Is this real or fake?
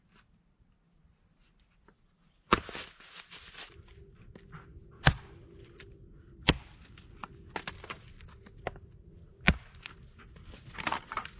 real